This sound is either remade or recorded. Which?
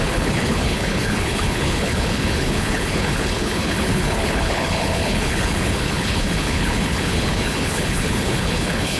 remade